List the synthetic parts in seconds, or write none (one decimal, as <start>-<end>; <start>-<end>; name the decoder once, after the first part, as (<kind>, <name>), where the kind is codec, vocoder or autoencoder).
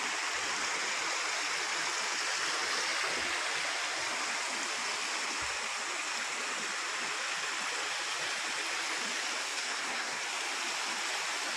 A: 9.4-10.2 (codec, SNAC)